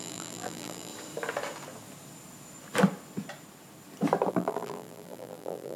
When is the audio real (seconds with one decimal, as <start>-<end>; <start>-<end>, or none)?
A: 0.9-4.3